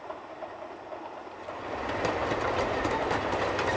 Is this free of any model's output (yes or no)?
yes